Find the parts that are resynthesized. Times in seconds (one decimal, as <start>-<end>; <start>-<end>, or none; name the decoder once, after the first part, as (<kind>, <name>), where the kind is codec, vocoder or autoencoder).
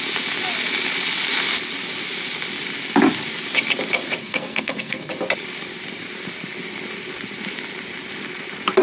4.2-5.1 (codec, SNAC)